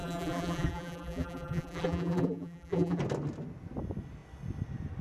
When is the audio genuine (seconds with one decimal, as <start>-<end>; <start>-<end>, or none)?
3.0-5.0